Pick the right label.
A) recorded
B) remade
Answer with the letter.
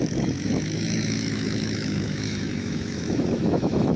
B